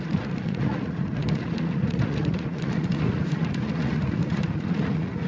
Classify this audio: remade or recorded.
remade